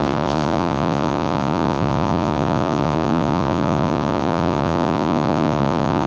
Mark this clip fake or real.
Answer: fake